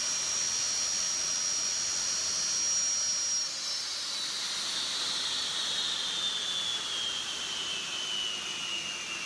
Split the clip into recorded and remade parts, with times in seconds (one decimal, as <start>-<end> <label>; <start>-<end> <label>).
0.0-9.3 recorded